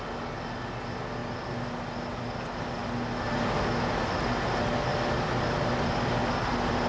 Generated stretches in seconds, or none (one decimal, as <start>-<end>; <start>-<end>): none